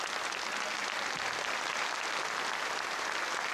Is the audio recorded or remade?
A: recorded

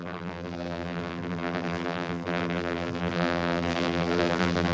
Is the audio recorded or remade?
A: remade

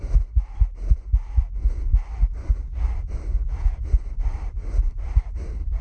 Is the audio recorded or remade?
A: recorded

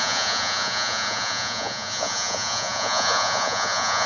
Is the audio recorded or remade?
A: remade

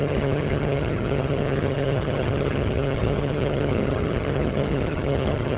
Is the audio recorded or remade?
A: remade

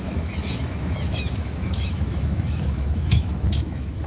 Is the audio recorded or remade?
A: remade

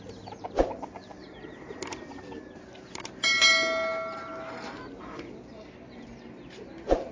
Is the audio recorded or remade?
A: recorded